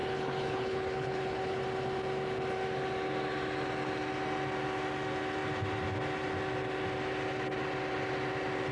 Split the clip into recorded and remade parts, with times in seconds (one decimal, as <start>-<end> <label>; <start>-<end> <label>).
0.0-1.6 remade; 1.6-8.7 recorded